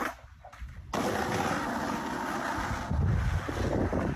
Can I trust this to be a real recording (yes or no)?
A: yes